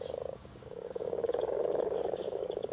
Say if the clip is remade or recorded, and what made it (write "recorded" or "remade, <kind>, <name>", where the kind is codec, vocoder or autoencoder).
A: remade, codec, DAC